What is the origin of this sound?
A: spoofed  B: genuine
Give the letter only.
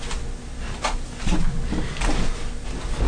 B